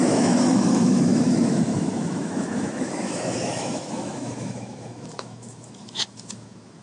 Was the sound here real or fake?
fake